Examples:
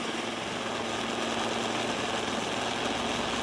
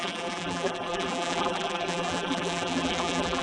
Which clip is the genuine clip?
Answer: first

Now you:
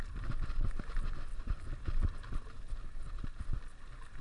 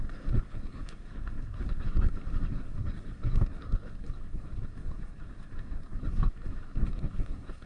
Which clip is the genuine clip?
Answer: first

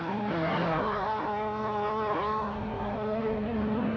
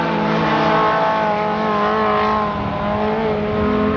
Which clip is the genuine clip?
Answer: second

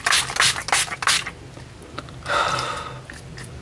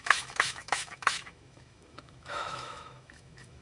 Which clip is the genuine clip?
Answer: first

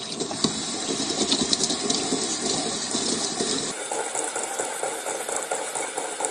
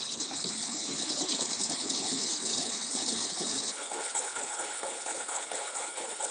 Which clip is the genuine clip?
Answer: first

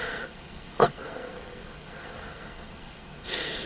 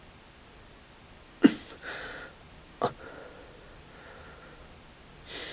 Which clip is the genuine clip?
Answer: second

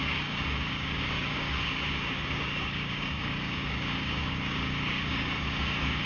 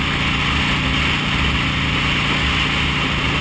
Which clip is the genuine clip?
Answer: second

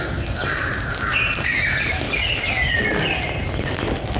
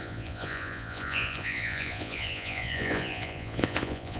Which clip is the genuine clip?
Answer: first